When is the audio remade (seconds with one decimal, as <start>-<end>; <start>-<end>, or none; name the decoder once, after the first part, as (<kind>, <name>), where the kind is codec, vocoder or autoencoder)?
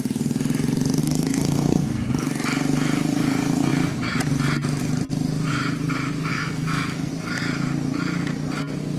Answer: 1.0-2.0 (codec, SNAC); 6.3-7.1